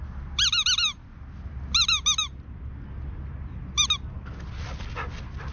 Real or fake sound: real